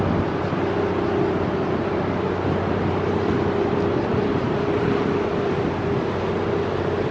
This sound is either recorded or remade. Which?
recorded